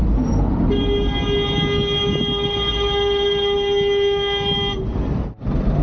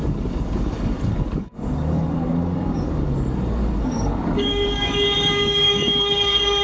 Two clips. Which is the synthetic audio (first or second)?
second